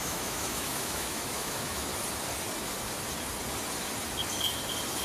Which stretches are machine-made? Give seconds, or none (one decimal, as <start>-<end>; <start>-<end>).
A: 0.0-1.9